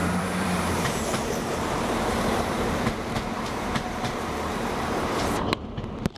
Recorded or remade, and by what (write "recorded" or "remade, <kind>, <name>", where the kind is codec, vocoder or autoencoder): remade, vocoder, BigVGAN v2